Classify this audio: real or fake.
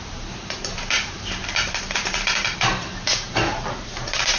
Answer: fake